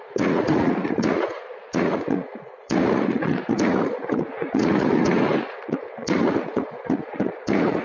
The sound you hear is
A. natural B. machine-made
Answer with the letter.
B